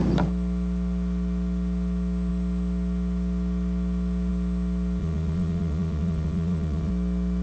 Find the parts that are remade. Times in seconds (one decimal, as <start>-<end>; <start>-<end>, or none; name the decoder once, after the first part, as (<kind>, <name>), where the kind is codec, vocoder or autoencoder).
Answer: 5.0-6.9 (vocoder, Vocos)